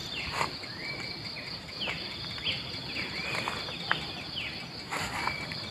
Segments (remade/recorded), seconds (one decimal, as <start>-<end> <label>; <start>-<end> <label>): 0.0-0.9 remade; 0.9-5.7 recorded